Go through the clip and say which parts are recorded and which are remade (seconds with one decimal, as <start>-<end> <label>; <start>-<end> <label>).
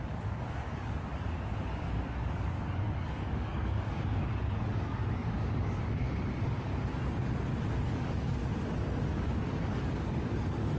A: 0.0-6.7 remade; 6.7-7.8 recorded; 7.8-8.4 remade; 8.4-9.1 recorded; 9.1-10.8 remade